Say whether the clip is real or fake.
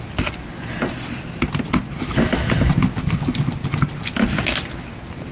real